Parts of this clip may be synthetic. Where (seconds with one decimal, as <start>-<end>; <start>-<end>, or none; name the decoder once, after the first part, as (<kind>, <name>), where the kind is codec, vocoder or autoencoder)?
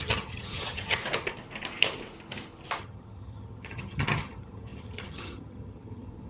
0.0-1.0 (vocoder, HiFi-GAN); 2.8-6.3